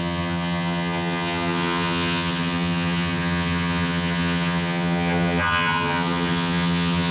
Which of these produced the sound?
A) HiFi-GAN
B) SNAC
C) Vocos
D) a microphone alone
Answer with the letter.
A